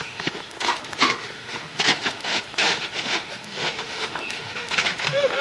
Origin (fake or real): fake